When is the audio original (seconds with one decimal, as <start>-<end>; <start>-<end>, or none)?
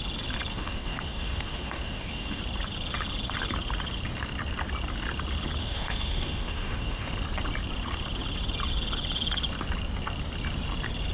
0.0-0.5; 2.4-5.6; 7.1-11.1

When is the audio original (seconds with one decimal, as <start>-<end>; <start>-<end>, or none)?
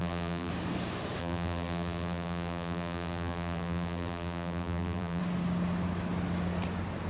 0.5-1.2; 5.2-7.1